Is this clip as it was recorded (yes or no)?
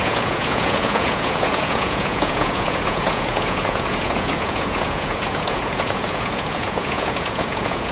no